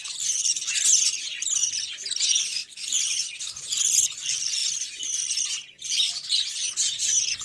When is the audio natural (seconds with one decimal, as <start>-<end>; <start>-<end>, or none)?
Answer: 0.0-7.4